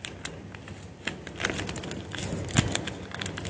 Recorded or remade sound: recorded